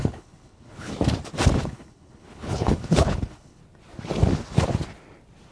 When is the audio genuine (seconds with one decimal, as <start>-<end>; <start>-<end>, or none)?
0.9-1.6; 3.6-5.5